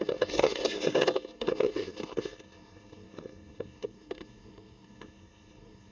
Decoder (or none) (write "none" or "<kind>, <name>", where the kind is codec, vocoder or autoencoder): codec, SNAC